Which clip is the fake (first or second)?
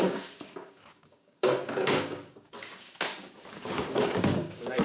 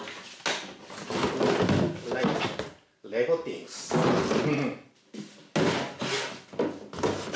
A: first